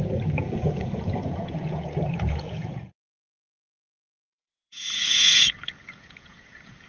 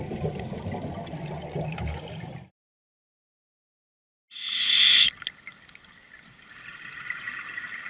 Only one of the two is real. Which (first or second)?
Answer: second